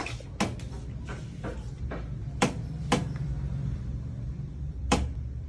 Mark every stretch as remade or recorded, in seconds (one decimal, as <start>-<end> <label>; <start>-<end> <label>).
0.0-2.2 recorded; 2.2-5.5 remade